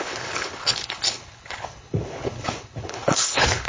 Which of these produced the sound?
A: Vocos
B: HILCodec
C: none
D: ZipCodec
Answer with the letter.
B